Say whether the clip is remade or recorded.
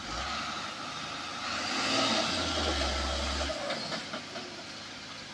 recorded